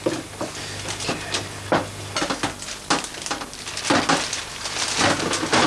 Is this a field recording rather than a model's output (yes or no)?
yes